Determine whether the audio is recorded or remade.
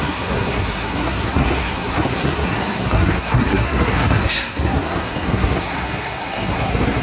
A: remade